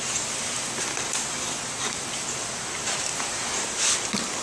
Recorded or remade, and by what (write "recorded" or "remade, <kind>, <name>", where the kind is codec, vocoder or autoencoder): recorded